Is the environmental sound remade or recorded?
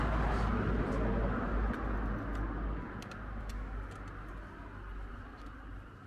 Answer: recorded